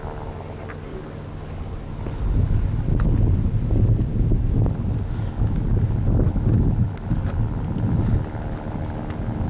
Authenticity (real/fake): real